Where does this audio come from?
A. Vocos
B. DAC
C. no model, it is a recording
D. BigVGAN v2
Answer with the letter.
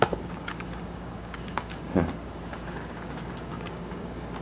B